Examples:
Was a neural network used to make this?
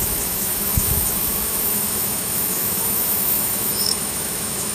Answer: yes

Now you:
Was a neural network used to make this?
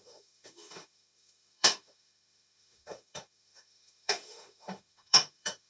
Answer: yes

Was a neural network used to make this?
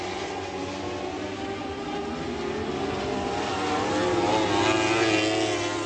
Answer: no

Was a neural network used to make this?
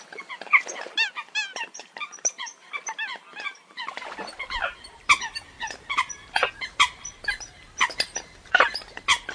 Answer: no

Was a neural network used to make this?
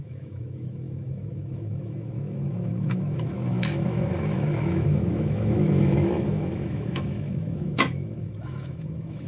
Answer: yes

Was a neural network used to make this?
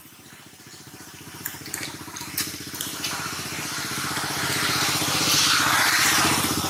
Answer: no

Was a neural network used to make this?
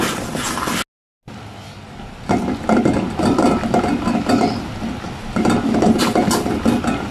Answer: no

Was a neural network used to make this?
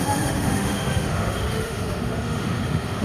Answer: yes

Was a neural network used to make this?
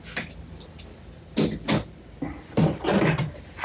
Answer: no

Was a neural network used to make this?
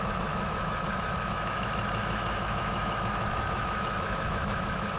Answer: yes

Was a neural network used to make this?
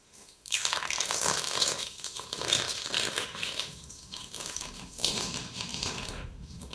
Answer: yes